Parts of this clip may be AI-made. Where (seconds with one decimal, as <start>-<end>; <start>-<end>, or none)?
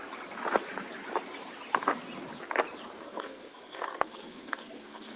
3.0-5.2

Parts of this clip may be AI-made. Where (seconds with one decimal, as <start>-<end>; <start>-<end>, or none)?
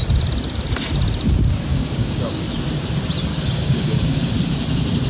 1.7-2.4; 3.3-4.3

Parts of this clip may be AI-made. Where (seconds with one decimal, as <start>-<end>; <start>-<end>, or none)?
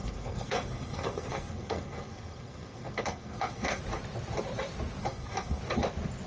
0.0-3.8; 5.0-5.6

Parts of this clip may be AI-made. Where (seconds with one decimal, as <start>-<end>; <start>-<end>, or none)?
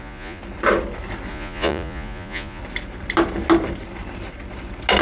0.0-0.4; 1.3-2.6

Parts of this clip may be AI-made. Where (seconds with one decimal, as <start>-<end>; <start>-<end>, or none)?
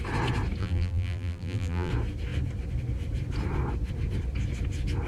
0.6-1.9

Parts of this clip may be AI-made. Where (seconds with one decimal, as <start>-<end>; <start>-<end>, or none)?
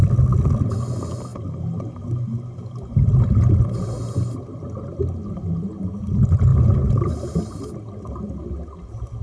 none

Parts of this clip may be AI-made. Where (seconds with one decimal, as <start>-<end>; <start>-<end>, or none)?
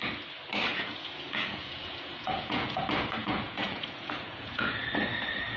0.7-2.8; 3.2-4.8